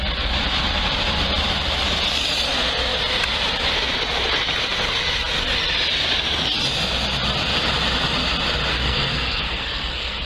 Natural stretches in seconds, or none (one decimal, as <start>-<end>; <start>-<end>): 0.0-8.7